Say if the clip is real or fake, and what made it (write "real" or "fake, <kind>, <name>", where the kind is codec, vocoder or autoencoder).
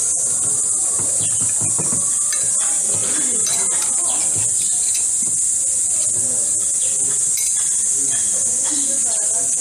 real